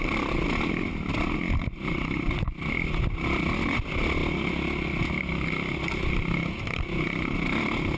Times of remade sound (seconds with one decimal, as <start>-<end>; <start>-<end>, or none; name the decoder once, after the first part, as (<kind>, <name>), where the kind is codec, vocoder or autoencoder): none